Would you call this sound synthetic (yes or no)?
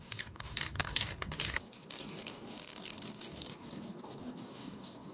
yes